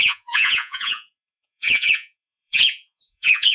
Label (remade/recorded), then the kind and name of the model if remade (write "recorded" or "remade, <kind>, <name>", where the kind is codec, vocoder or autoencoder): remade, vocoder, Vocos